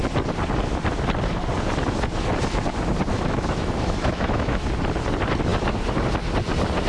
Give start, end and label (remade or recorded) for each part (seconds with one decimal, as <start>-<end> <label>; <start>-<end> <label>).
0.0-3.1 recorded; 3.1-4.6 remade; 4.6-6.9 recorded